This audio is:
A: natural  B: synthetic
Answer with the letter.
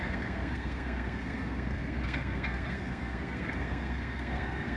B